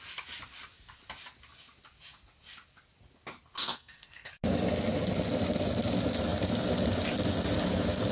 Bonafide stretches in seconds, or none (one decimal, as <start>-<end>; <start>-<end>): 0.0-3.6; 4.3-8.1